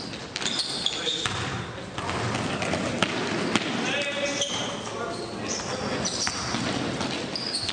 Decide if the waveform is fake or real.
real